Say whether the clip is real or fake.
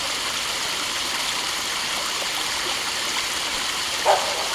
real